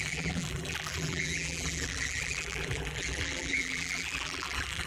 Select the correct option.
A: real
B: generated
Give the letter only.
B